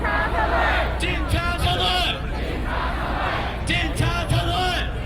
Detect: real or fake real